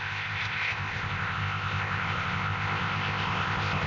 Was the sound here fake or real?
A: fake